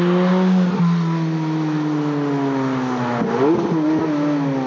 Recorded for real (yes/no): yes